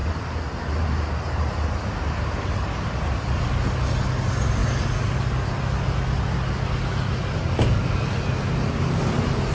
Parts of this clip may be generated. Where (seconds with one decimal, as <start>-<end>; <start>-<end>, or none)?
none